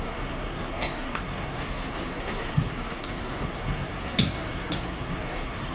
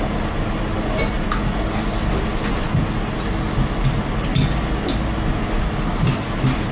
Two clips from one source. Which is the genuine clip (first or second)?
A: second